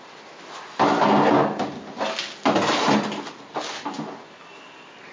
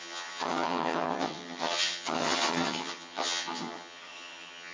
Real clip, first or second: first